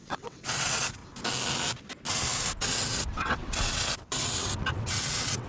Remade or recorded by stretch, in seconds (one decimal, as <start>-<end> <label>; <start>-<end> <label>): 0.0-1.0 remade; 1.0-2.6 recorded; 2.6-5.5 remade